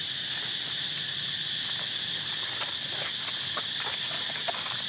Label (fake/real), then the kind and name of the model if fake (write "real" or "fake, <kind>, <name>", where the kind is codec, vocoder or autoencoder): real